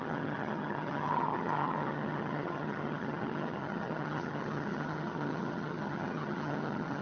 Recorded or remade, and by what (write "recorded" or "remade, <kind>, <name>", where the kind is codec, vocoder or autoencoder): remade, vocoder, HiFi-GAN